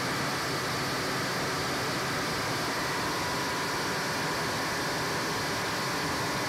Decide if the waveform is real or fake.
real